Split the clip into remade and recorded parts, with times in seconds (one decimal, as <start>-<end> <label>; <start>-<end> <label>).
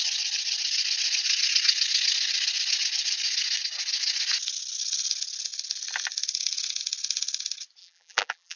0.0-7.8 recorded; 7.8-8.6 remade